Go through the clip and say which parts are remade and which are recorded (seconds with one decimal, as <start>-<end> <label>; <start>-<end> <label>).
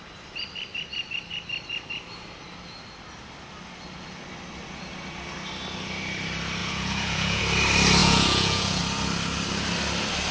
0.0-6.6 recorded; 6.6-7.4 remade; 7.4-8.0 recorded; 8.0-8.8 remade; 8.8-10.3 recorded